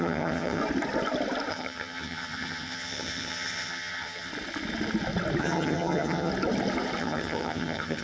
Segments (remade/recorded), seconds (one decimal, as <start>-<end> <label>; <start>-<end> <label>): 0.0-0.6 remade; 0.6-1.5 recorded; 1.5-4.3 remade; 4.3-5.4 recorded; 5.4-6.3 remade; 6.3-7.0 recorded; 7.0-8.0 remade